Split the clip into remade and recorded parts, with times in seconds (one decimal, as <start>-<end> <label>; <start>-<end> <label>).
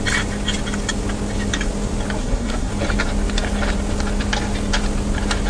0.0-2.2 recorded; 2.2-2.7 remade; 2.7-5.5 recorded